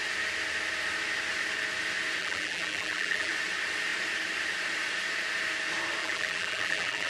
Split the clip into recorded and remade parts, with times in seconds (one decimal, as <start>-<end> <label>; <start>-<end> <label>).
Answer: 0.0-2.2 recorded; 2.2-3.3 remade; 3.3-6.0 recorded; 6.0-7.1 remade